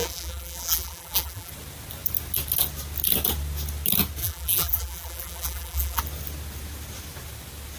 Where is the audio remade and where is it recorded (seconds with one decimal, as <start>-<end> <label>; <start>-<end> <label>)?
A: 0.0-1.5 remade; 1.5-4.2 recorded; 4.2-6.0 remade; 6.0-7.8 recorded